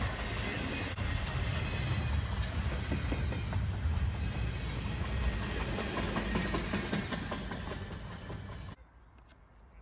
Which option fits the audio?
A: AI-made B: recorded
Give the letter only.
B